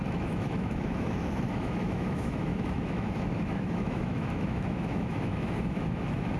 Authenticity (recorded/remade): remade